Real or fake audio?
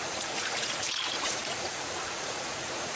fake